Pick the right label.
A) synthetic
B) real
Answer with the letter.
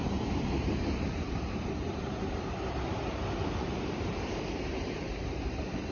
A